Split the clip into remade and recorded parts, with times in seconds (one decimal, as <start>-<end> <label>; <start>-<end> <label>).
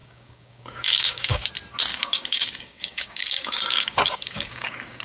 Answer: 0.0-1.5 remade; 1.5-1.9 recorded; 1.9-5.0 remade